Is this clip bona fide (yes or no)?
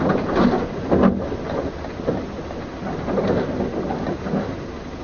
yes